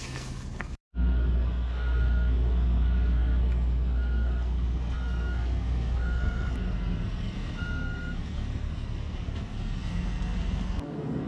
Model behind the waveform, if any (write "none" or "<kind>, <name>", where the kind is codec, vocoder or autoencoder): codec, SNAC